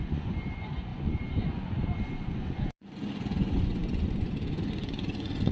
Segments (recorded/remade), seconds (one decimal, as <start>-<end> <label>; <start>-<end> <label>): 0.0-5.5 remade